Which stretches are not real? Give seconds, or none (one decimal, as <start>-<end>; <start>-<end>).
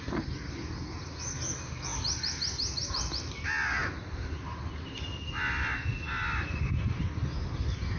none